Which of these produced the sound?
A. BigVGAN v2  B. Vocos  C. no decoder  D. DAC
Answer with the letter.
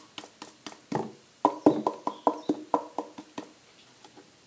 C